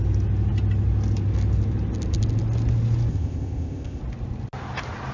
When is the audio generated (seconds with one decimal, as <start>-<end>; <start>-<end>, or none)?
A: 3.1-4.0